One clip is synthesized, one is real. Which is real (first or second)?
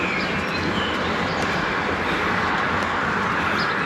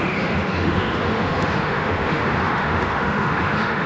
first